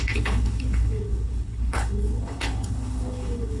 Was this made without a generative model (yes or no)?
no